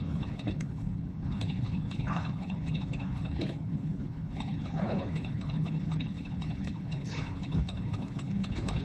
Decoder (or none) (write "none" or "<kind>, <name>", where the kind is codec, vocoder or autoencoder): codec, HILCodec